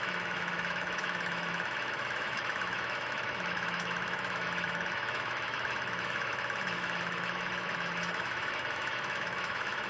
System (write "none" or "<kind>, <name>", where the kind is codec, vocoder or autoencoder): autoencoder, DAC-VAE